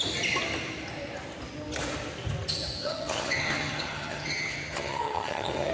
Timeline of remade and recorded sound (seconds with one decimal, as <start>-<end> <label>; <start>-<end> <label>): 0.0-2.8 recorded; 2.8-5.7 remade